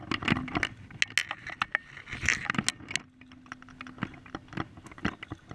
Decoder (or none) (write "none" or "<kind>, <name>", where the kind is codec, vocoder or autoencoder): none